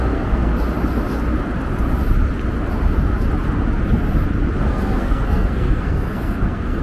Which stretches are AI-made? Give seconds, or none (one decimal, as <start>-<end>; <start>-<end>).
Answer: 0.0-0.5; 4.6-6.8